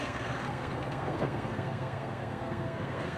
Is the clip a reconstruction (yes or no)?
yes